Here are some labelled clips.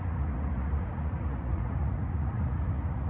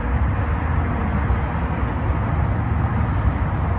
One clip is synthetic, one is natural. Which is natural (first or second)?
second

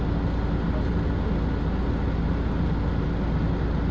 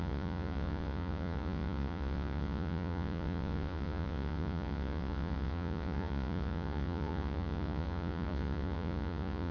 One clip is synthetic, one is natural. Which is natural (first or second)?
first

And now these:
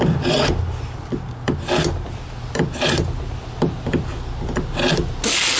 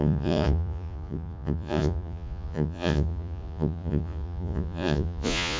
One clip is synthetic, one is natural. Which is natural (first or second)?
first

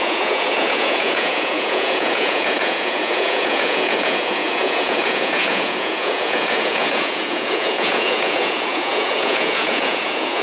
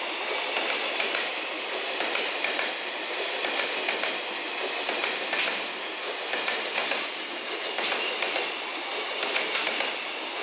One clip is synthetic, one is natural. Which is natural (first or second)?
second